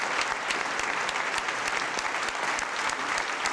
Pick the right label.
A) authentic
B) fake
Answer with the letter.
A